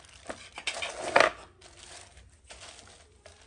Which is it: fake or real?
real